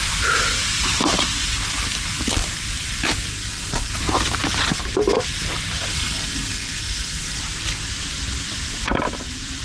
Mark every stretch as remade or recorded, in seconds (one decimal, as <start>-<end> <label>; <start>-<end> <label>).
0.0-3.3 recorded; 3.3-3.9 remade; 3.9-5.9 recorded; 5.9-7.4 remade; 7.4-9.6 recorded